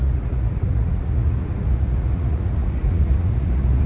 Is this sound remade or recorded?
remade